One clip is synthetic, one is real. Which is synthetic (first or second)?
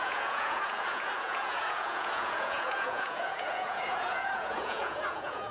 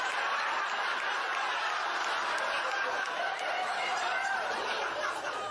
first